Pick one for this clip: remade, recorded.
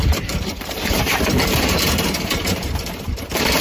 remade